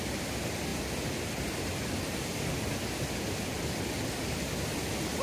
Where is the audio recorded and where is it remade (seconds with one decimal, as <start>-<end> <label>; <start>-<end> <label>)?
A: 0.0-5.2 recorded